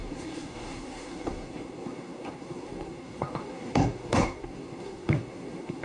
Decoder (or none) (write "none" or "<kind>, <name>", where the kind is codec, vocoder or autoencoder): codec, SNAC